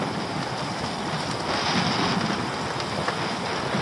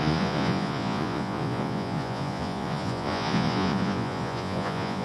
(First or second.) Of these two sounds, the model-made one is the second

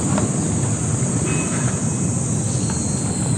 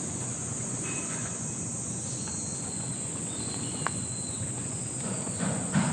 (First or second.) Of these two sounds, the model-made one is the second